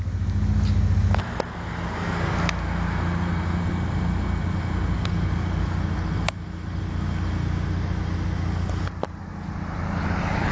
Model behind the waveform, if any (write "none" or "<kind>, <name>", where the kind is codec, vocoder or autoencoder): none